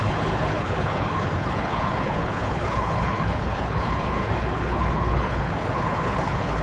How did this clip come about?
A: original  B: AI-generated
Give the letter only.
B